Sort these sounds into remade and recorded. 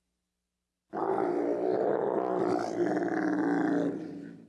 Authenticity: recorded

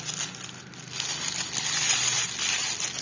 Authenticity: recorded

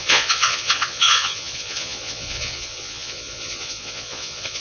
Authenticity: remade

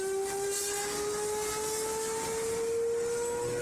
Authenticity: recorded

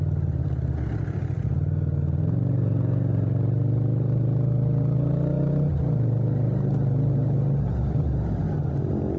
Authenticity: recorded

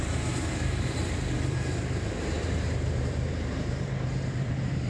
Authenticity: remade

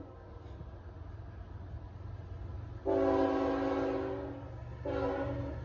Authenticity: recorded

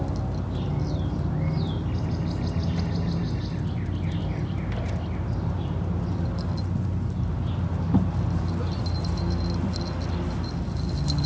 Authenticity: recorded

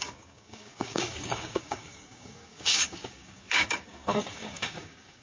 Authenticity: remade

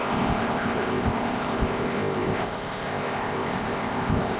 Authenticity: remade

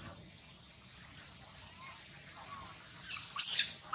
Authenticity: recorded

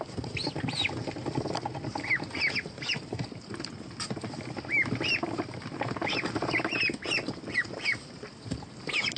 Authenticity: recorded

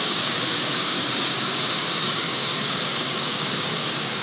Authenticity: remade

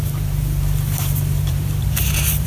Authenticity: remade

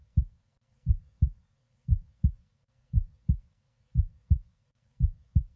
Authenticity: remade